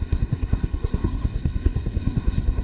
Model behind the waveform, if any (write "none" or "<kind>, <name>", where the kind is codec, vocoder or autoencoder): codec, SNAC